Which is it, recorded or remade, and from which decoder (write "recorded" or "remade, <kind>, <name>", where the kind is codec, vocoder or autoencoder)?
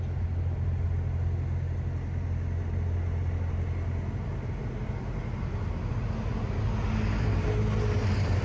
recorded